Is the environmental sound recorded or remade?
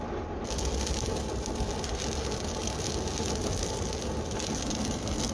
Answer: recorded